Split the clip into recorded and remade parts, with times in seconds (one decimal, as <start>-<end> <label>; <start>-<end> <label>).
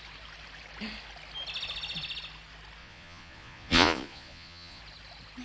0.0-2.8 recorded; 2.8-4.8 remade; 4.8-5.4 recorded